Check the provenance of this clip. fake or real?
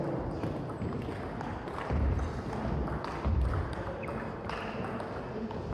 real